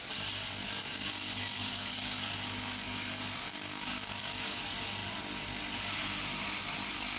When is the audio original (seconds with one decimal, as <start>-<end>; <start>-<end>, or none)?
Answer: 0.0-0.8; 4.6-7.2